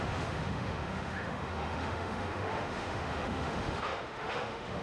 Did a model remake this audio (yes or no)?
yes